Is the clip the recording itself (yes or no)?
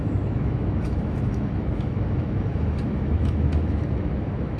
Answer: no